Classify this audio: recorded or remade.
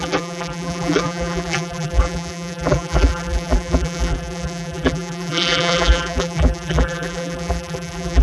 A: remade